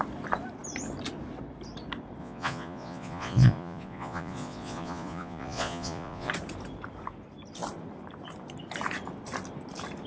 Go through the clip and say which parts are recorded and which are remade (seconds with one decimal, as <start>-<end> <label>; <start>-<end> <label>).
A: 0.0-2.2 recorded; 2.2-6.3 remade; 6.3-10.1 recorded